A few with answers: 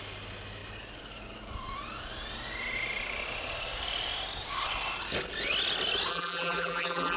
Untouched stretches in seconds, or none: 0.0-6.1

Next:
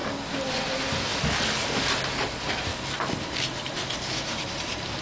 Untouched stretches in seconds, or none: 0.0-0.5; 1.1-2.1; 2.7-4.0

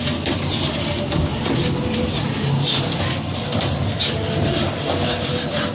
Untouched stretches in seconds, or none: 0.0-5.7

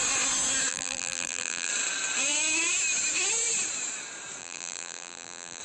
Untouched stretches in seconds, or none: 0.0-0.7; 1.7-4.4

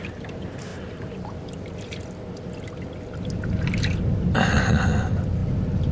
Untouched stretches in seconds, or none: 0.0-5.9

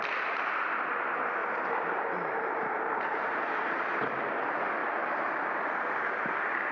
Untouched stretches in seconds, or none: 0.0-1.4; 3.6-4.8; 6.0-6.7

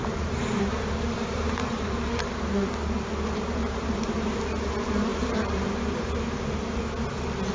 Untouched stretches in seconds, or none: 2.3-3.6; 4.4-5.1; 6.5-7.5

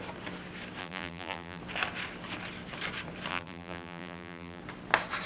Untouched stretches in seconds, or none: 0.0-0.8; 1.6-3.3; 4.6-5.3